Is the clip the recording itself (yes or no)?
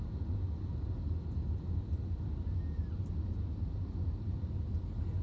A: yes